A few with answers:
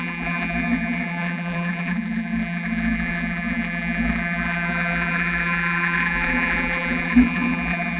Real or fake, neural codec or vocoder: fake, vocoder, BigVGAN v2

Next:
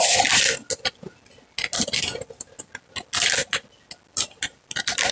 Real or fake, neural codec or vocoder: real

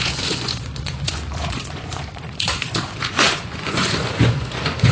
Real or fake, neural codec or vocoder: fake, vocoder, Vocos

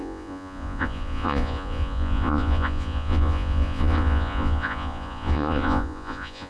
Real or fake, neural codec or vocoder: fake, vocoder, Vocos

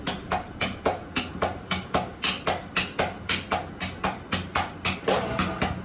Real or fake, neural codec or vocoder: real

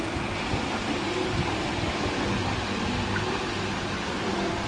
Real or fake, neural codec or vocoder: real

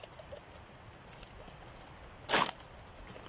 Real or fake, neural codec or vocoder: real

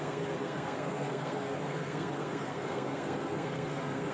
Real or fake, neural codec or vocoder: fake, codec, SNAC